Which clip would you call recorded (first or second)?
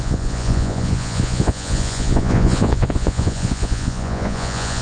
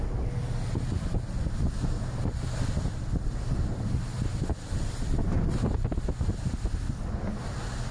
second